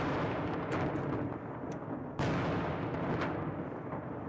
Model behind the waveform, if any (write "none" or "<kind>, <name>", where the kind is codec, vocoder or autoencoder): none